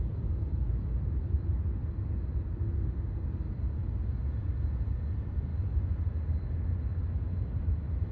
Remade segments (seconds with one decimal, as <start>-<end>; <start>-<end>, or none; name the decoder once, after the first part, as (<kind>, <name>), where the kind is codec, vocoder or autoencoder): 0.0-1.8 (vocoder, BigVGAN v2); 4.6-5.5; 7.4-8.1